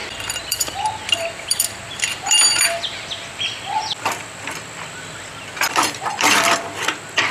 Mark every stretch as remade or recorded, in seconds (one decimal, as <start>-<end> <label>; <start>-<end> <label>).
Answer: 0.0-7.3 remade